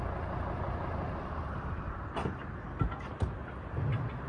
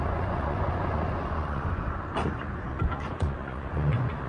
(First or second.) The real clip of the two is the first